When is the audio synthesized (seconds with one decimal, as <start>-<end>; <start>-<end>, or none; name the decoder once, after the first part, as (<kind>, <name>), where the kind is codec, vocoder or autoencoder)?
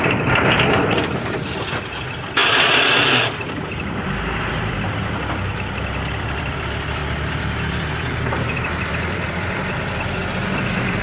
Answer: 0.0-2.4 (vocoder, BigVGAN v2); 3.3-11.0